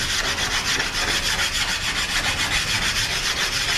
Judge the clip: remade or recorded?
recorded